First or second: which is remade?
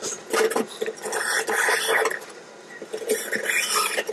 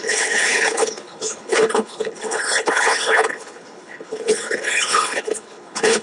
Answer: second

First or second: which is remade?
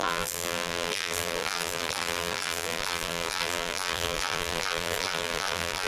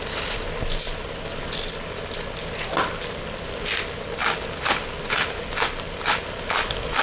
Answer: first